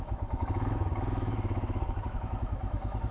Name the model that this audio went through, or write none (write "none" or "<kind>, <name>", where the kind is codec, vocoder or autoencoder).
autoencoder, DAC-VAE